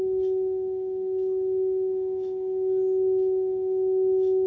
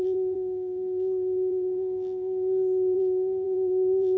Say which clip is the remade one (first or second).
second